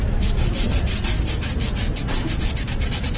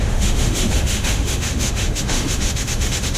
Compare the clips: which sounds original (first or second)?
first